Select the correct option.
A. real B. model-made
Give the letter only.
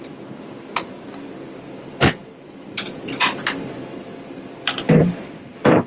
B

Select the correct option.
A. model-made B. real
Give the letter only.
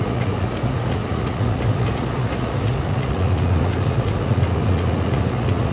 A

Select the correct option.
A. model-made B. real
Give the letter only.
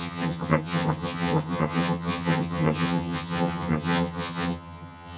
A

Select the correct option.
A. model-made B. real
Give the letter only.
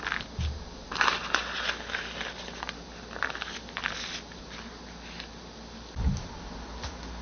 B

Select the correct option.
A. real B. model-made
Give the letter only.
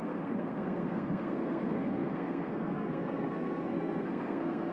B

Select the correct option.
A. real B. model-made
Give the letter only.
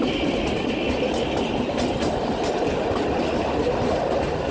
A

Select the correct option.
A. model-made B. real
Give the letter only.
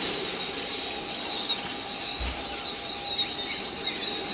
B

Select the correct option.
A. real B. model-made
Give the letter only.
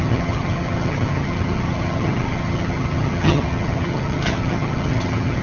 B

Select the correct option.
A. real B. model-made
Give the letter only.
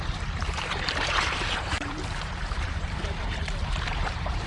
B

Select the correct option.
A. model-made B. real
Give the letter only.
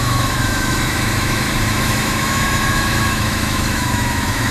A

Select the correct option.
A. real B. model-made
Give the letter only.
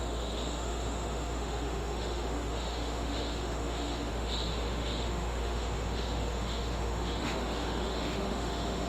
B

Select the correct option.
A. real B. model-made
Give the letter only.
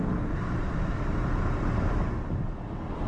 A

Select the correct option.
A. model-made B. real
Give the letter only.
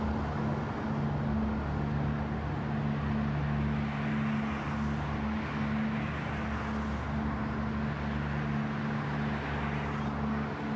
B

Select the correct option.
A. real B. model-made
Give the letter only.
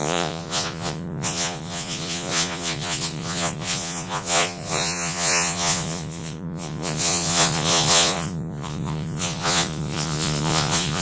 B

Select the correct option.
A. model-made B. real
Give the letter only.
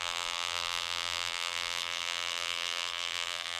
A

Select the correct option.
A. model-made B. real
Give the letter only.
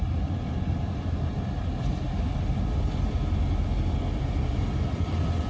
B